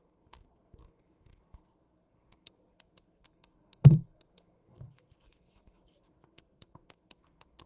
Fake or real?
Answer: fake